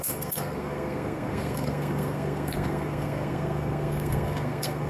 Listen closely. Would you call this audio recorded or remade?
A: remade